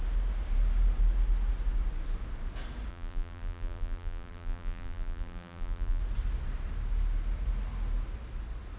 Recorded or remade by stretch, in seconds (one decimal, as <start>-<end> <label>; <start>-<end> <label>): 0.0-2.9 recorded; 2.9-6.0 remade; 6.0-8.8 recorded